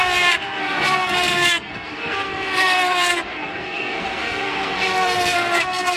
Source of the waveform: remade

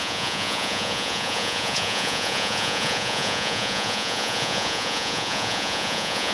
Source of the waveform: remade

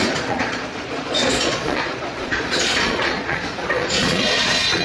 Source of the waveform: remade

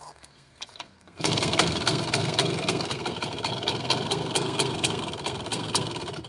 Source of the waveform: remade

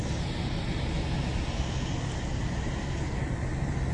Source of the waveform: recorded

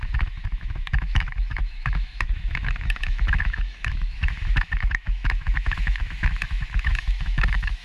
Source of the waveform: remade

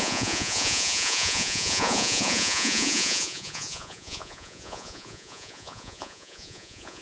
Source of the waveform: remade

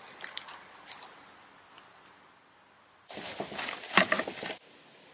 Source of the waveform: recorded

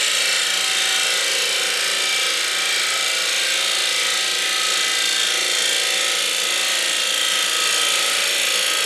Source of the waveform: recorded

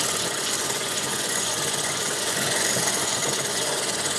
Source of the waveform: remade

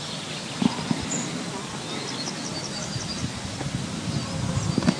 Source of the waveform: recorded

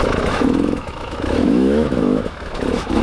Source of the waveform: remade